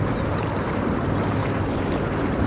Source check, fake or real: fake